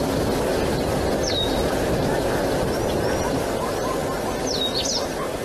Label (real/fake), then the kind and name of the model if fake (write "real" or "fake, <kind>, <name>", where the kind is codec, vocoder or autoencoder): real